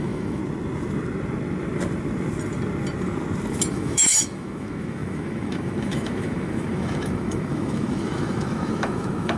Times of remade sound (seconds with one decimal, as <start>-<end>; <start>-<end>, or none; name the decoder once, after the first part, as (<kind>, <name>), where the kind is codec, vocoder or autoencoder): 0.0-0.4 (autoencoder, DAC-VAE); 3.7-9.4